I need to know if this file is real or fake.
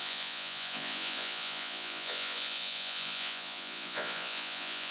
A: fake